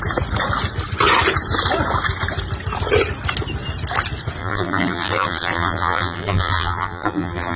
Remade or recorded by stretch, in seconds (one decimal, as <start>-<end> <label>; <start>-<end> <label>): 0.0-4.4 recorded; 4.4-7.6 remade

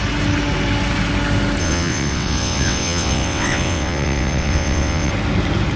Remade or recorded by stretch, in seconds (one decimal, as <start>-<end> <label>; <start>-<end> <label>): 0.0-1.6 recorded; 1.6-5.1 remade; 5.1-5.8 recorded

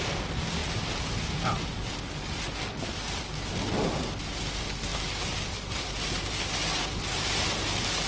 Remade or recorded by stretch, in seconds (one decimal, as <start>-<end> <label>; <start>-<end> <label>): 0.0-8.1 recorded